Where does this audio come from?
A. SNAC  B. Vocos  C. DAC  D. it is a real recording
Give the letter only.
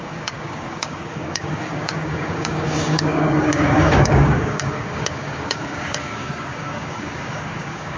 C